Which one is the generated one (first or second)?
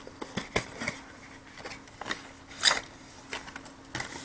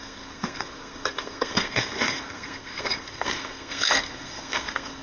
second